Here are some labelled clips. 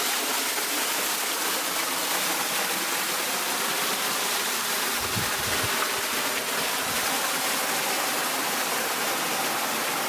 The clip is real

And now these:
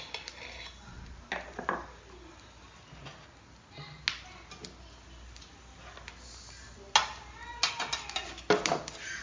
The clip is real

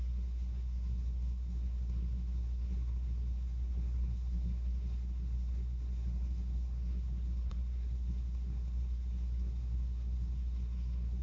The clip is fake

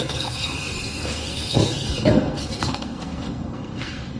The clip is fake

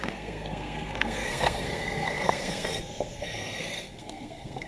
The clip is fake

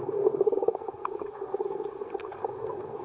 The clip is fake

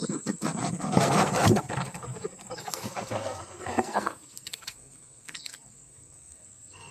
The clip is fake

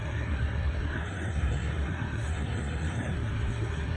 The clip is fake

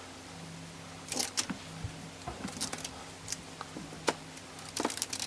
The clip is real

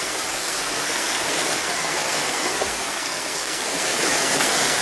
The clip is fake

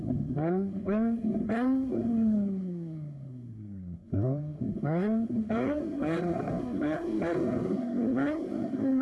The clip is fake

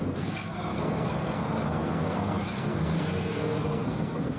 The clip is fake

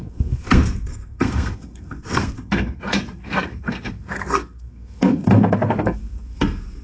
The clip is fake